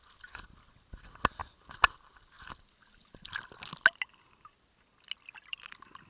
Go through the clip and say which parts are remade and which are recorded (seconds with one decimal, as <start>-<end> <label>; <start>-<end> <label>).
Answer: 0.0-6.1 recorded